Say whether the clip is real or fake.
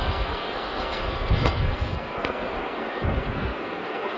fake